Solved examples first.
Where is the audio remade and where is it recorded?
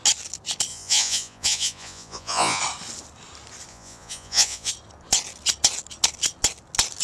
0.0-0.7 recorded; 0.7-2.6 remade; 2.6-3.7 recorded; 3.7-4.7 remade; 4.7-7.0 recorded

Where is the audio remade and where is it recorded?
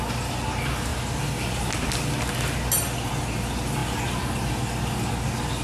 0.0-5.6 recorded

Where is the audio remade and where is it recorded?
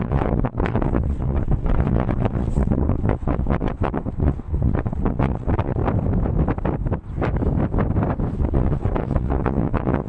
0.0-5.8 remade; 5.8-8.4 recorded; 8.4-10.1 remade